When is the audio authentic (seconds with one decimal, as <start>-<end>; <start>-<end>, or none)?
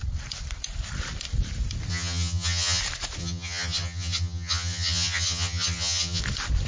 0.0-1.9; 2.8-3.2; 6.2-6.7